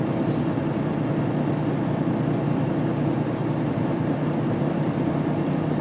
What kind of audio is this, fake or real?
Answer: real